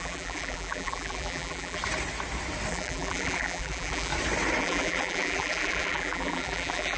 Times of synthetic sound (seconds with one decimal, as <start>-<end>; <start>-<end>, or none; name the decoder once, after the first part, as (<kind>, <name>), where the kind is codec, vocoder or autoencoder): 0.0-1.8 (vocoder, BigVGAN v2); 2.7-4.1; 4.6-7.0